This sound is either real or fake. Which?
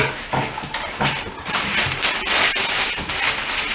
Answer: real